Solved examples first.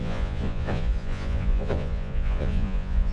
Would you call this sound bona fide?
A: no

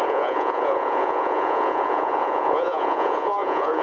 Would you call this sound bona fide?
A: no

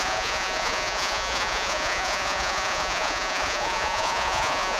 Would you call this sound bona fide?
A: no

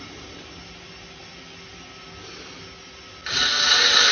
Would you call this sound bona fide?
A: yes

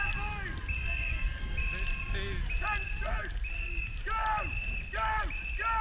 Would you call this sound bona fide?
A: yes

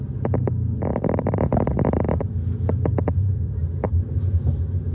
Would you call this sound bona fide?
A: yes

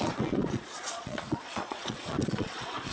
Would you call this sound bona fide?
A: no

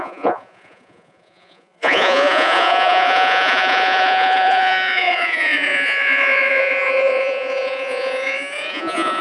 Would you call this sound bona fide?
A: no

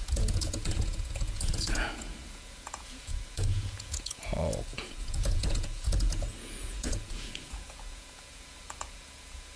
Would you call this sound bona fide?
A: no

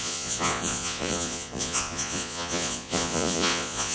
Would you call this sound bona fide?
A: no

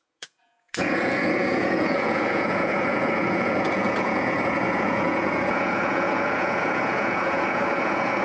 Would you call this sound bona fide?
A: no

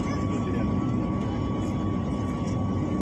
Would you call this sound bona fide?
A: yes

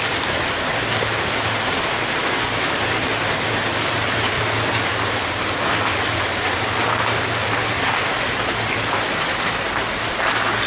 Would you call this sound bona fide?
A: yes